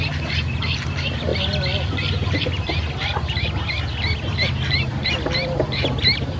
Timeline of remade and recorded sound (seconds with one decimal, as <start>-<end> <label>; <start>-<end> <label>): 0.0-6.4 recorded